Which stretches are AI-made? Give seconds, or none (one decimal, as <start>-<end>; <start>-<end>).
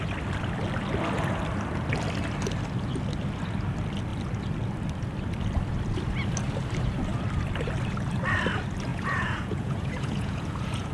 8.9-10.9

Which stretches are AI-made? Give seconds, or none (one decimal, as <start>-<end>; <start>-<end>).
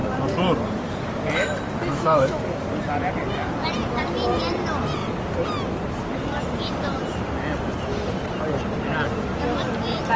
1.9-2.4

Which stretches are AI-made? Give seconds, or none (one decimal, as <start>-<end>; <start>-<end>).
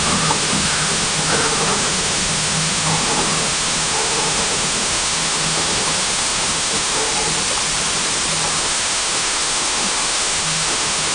0.0-7.1; 8.5-11.1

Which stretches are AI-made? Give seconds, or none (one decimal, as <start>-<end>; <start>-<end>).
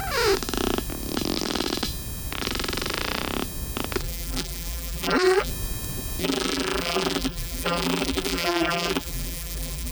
4.0-5.5; 6.2-9.9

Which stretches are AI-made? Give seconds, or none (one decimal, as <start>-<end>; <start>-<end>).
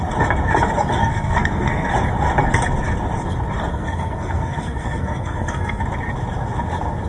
1.0-1.9; 3.7-5.8